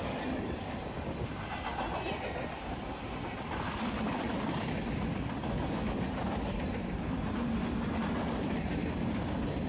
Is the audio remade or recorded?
recorded